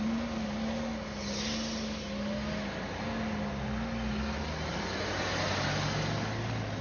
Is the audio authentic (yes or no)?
yes